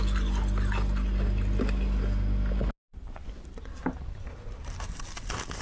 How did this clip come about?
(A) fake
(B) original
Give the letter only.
B